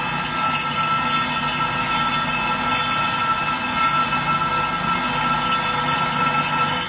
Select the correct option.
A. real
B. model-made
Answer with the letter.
A